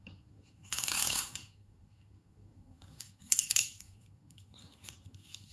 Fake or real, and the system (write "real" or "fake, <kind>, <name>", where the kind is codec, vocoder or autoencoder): fake, codec, SNAC